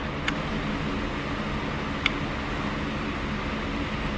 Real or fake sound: real